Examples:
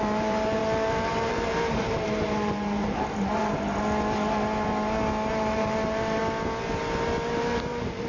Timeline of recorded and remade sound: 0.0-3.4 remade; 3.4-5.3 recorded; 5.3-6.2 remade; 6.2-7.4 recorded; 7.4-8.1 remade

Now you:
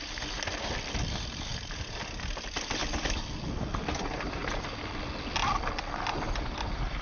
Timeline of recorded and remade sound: 0.0-4.4 remade; 4.4-5.9 recorded; 5.9-7.0 remade

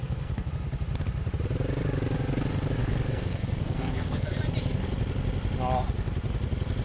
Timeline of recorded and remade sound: 0.0-0.5 remade; 0.5-2.8 recorded; 2.8-4.4 remade; 4.4-6.8 recorded

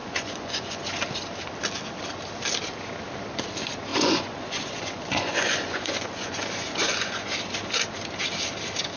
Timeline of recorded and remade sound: 0.0-0.8 remade; 0.8-3.9 recorded; 3.9-7.3 remade; 7.3-9.0 recorded

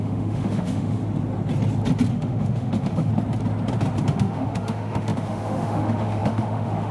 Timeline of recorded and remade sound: 0.0-1.0 remade; 1.0-2.1 recorded; 2.1-3.1 remade; 3.1-4.1 recorded; 4.1-6.9 remade

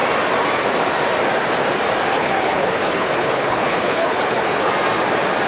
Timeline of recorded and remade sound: 0.0-2.1 recorded; 2.1-4.7 remade; 4.7-5.5 recorded

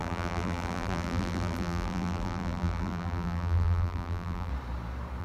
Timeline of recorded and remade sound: 0.0-4.5 remade; 4.5-5.2 recorded